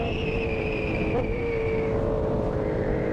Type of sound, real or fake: fake